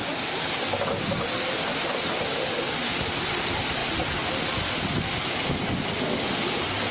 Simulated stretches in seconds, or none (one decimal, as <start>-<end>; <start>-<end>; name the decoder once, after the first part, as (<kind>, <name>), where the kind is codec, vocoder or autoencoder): 3.2-3.8 (vocoder, BigVGAN v2); 6.4-6.9